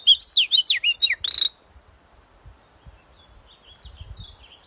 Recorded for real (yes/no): yes